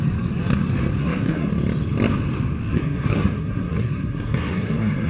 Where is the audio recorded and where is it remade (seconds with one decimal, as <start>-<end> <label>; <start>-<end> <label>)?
0.0-1.0 recorded; 1.0-1.5 remade; 1.5-2.7 recorded; 2.7-5.1 remade